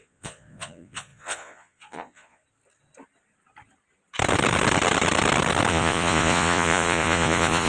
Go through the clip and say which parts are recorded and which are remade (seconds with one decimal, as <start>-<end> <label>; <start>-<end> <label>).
0.0-2.4 remade; 2.4-5.7 recorded; 5.7-7.7 remade